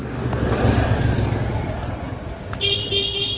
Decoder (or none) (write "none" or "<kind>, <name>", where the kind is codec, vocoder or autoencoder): none